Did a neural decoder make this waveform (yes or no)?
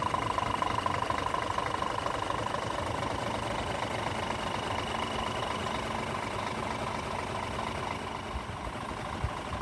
no